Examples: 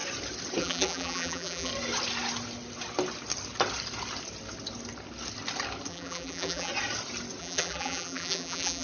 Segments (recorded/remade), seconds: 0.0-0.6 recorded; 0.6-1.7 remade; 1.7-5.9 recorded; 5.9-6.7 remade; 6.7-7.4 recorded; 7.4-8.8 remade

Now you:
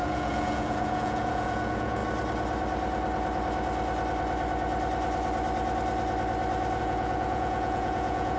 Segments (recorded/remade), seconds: 0.0-2.0 remade; 2.0-6.8 recorded; 6.8-8.4 remade

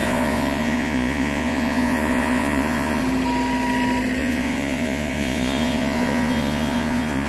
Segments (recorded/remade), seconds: 0.0-3.0 remade; 3.0-4.2 recorded; 4.2-7.3 remade

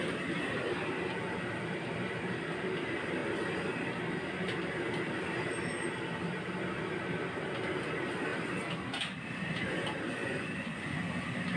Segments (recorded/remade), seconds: 0.0-10.2 recorded; 10.2-11.0 remade; 11.0-11.6 recorded

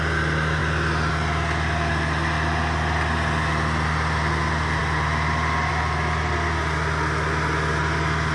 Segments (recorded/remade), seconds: 0.0-8.3 recorded